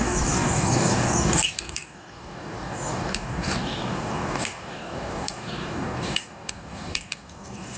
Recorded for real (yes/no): no